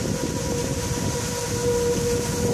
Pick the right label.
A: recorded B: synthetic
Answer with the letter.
A